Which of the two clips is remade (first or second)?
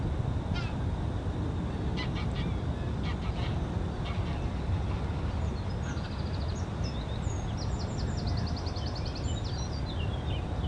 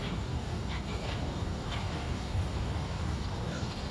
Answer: second